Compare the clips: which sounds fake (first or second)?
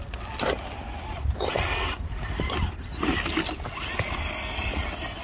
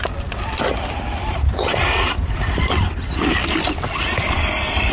second